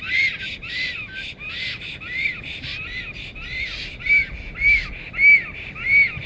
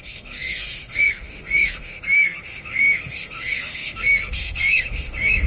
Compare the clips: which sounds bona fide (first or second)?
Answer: first